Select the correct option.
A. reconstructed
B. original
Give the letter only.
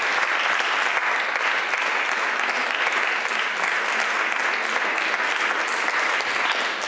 B